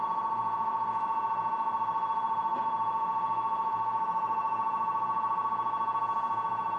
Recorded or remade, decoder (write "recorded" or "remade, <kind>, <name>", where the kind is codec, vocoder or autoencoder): recorded